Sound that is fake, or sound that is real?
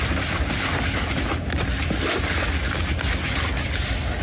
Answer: real